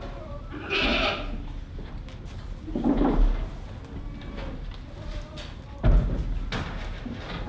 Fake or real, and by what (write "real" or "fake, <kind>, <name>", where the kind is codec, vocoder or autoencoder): real